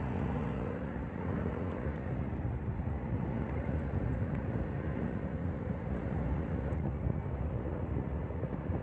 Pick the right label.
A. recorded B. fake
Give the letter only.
B